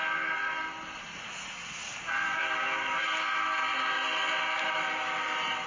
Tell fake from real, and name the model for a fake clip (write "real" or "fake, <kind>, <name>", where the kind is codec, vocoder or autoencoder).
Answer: real